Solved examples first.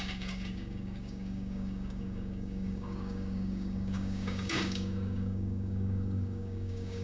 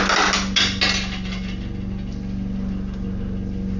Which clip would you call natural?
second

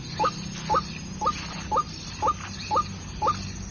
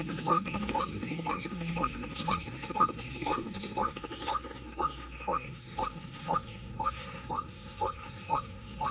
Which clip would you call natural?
first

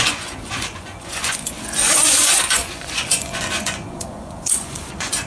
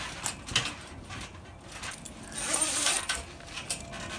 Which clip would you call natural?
second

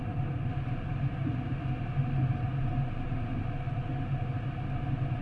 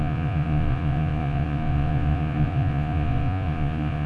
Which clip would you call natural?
first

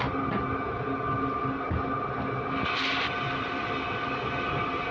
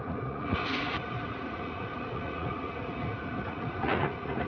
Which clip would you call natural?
first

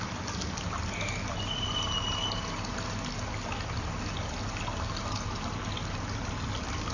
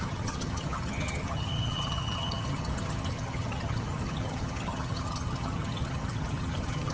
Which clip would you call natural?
first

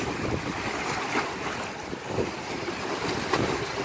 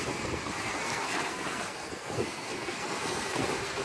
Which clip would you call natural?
first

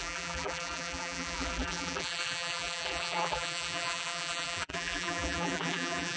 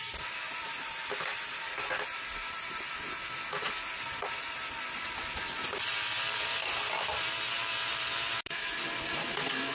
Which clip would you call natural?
second